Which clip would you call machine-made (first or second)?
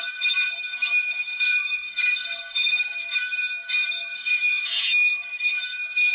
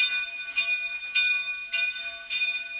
first